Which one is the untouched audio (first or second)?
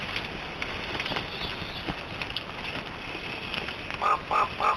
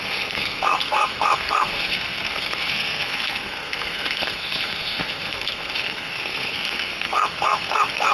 first